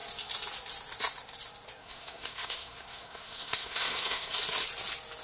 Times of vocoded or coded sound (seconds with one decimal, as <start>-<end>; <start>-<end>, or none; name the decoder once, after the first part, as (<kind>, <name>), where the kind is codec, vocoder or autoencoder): 1.8-4.3 (codec, SNAC)